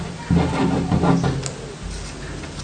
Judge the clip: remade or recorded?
recorded